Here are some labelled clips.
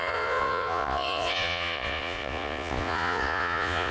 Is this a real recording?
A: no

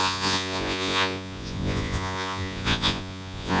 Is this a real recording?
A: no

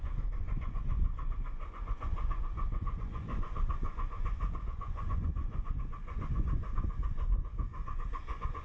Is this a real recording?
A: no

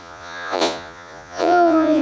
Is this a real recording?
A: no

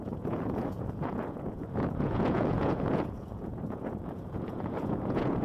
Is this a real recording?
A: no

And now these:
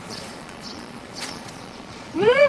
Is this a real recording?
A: no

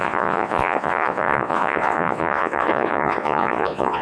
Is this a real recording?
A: no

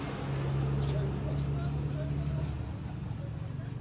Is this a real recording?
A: yes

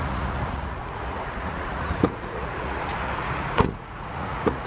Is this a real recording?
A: no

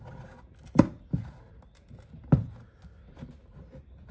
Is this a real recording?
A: yes